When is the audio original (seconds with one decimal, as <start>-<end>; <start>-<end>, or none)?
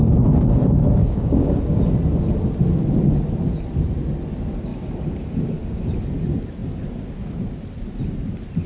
0.0-1.0; 1.6-8.7